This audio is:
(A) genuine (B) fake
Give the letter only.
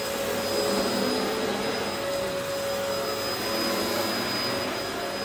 A